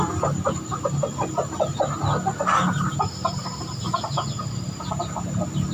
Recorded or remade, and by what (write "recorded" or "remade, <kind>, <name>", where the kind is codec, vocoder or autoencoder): remade, vocoder, BigVGAN v2